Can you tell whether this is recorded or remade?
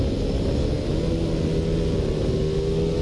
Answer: recorded